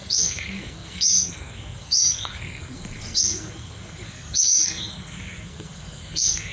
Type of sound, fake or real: fake